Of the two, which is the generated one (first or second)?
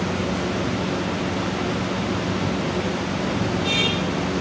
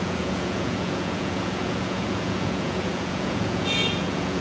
second